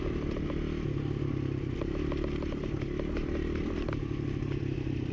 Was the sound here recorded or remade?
recorded